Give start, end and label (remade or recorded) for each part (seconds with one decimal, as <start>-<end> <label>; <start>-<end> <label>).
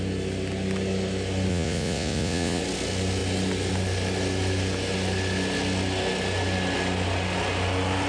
0.0-1.5 recorded; 1.5-2.6 remade; 2.6-8.1 recorded